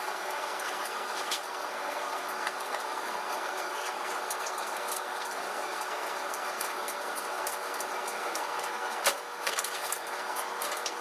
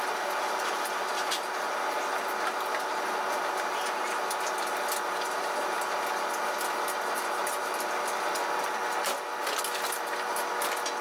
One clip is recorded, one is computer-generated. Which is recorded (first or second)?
second